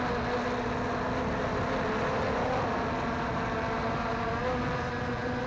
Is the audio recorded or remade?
recorded